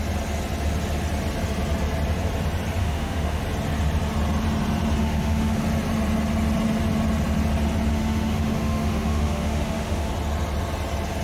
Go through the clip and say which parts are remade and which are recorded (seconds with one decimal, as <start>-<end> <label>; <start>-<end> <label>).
0.0-2.8 recorded; 2.8-3.4 remade; 3.4-5.0 recorded; 5.0-5.6 remade; 5.6-7.9 recorded; 7.9-10.1 remade; 10.1-11.2 recorded